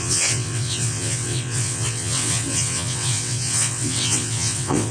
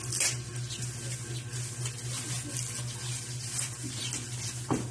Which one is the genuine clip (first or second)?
second